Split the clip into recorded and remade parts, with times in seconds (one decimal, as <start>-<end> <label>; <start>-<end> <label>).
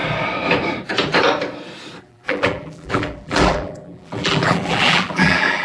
0.0-2.0 recorded; 2.0-5.6 remade